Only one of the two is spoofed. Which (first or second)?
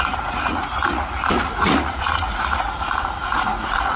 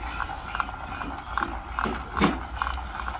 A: first